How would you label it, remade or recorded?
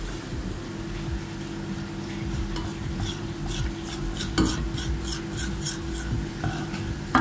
recorded